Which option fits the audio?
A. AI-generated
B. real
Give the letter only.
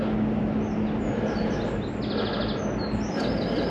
B